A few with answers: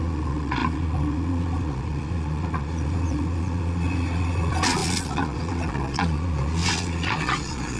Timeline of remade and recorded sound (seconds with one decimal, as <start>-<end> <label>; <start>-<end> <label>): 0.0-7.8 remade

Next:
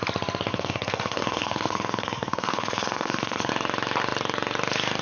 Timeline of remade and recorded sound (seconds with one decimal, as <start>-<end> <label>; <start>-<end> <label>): 0.0-0.5 recorded; 0.5-3.5 remade; 3.5-5.0 recorded

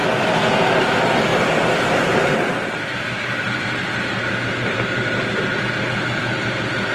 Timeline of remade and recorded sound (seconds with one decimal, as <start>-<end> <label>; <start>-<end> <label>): 0.0-1.3 recorded; 1.3-5.4 remade; 5.4-6.9 recorded

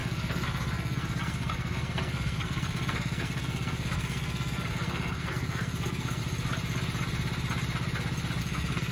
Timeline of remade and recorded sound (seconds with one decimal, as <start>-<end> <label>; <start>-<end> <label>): 0.0-6.2 remade; 6.2-8.4 recorded; 8.4-8.9 remade